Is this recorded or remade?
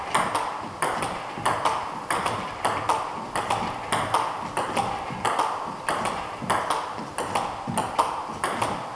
recorded